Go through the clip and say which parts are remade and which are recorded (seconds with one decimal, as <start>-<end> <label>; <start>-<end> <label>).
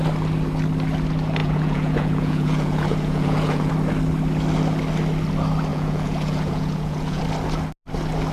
0.0-1.4 recorded; 1.4-3.7 remade; 3.7-5.7 recorded; 5.7-7.2 remade; 7.2-8.3 recorded